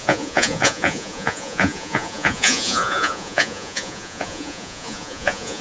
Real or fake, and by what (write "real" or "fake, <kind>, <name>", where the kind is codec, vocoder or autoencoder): fake, vocoder, Vocos